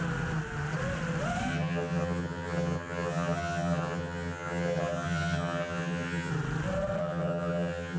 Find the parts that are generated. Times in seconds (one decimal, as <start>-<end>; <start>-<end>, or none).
1.5-6.3; 7.0-8.0